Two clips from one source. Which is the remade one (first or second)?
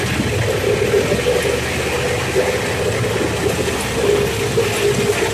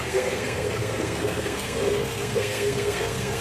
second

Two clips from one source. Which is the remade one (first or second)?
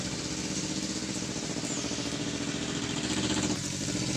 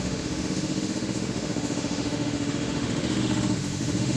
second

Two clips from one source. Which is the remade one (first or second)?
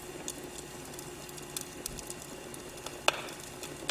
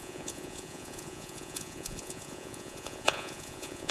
second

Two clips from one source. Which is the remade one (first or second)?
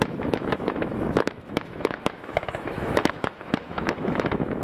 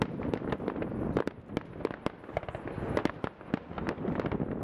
first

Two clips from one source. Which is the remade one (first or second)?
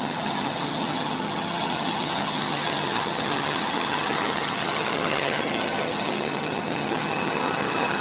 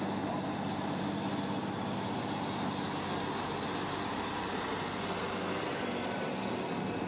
first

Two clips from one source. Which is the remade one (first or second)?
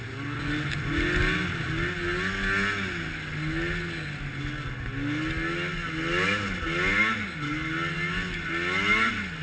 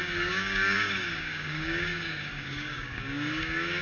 second